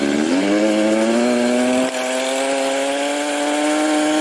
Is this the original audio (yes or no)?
yes